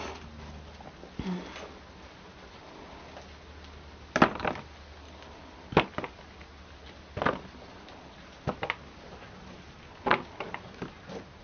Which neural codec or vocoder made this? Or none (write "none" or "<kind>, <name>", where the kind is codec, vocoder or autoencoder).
none